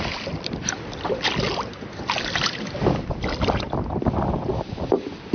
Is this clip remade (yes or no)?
no